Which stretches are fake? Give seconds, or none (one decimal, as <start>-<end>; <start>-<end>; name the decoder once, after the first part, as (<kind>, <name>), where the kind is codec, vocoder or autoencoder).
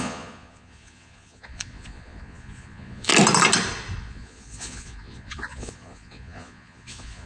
0.0-3.1 (vocoder, Vocos); 4.0-7.3